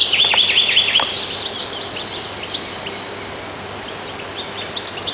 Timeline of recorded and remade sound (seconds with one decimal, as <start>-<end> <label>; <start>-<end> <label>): 0.0-5.1 recorded